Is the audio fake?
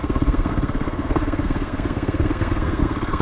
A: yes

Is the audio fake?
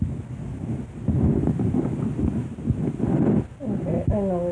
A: no